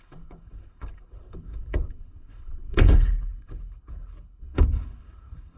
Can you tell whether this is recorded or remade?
remade